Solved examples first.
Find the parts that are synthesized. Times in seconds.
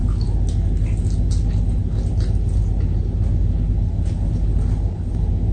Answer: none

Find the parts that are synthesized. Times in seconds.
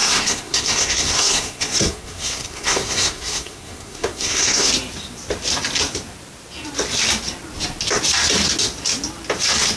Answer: 0.0-4.7 (codec, SNAC)